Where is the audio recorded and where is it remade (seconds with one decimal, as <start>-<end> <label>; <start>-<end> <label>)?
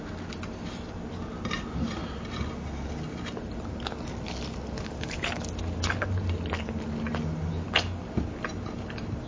0.0-9.3 recorded